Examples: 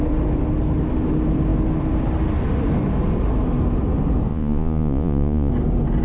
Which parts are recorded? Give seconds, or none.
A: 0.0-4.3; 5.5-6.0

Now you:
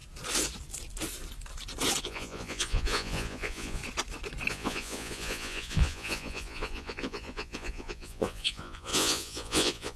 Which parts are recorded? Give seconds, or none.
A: 0.0-2.0; 3.8-4.5

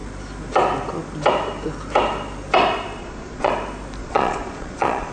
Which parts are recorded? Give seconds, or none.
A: 0.0-3.0; 3.5-4.0

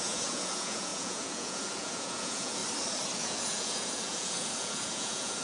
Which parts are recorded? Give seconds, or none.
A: 2.6-3.2

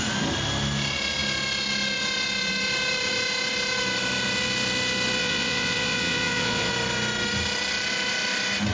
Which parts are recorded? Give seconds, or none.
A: 0.0-5.2; 6.7-8.7